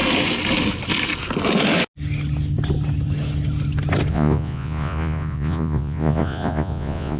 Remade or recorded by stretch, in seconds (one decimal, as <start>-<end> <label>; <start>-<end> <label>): 0.0-4.1 recorded; 4.1-7.2 remade